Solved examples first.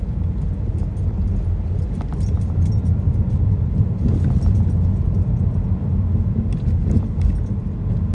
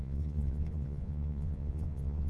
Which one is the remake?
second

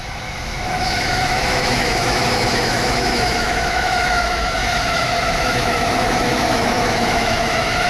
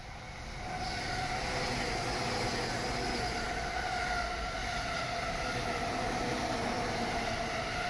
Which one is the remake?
first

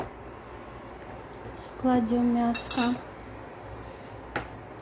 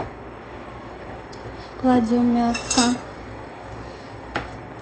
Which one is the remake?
second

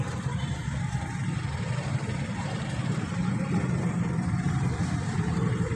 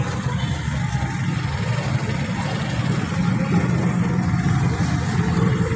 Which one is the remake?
first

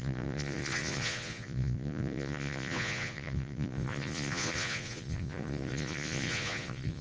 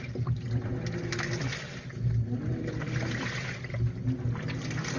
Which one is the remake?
first